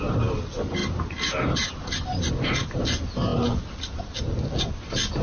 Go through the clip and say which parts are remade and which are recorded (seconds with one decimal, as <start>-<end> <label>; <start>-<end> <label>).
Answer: 0.0-5.2 recorded